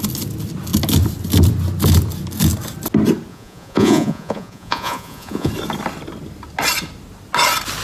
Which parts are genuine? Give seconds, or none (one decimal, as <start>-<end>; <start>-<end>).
0.0-3.3; 5.5-7.8